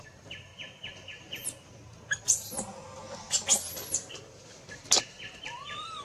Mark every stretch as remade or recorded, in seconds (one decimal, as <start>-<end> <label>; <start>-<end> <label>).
0.0-0.5 remade; 0.5-4.1 recorded; 4.1-6.0 remade